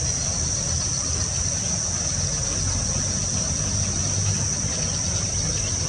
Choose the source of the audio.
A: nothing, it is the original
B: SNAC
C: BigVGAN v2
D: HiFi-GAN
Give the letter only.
A